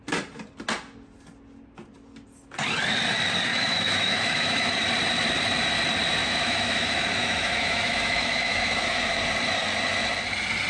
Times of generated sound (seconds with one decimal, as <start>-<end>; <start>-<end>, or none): 3.5-4.7; 6.2-9.2